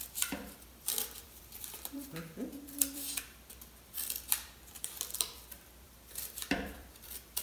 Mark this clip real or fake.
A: fake